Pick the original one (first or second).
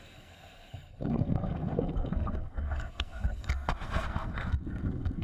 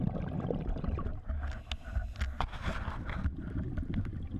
second